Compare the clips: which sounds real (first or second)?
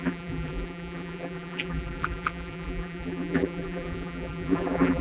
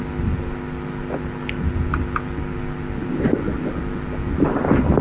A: second